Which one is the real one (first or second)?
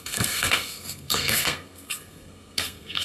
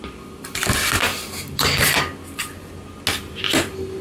second